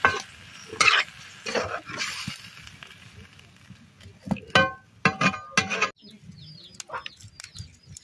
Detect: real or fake real